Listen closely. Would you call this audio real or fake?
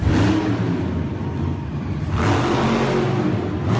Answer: real